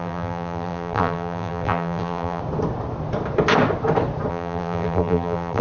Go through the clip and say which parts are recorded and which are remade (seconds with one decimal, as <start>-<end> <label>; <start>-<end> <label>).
0.0-2.4 remade; 2.4-4.3 recorded; 4.3-5.6 remade